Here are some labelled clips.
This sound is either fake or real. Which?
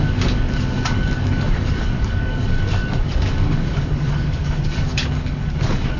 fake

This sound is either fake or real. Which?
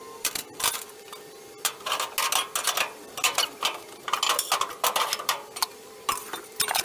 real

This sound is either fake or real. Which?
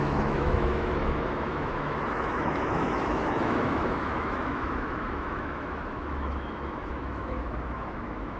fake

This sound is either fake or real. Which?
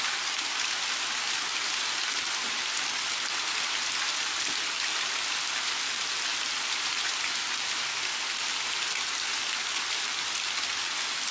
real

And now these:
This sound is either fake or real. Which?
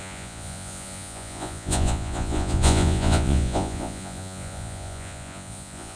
fake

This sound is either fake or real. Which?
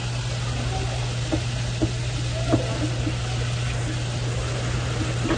real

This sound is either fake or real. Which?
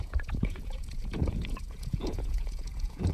fake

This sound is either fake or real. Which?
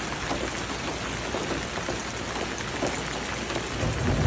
real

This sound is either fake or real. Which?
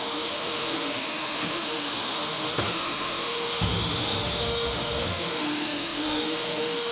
fake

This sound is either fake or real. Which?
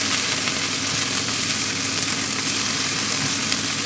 real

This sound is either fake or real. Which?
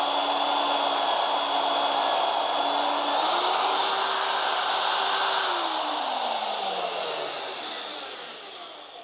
real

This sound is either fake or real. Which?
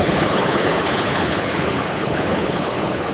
fake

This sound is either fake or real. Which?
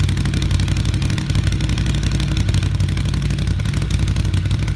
real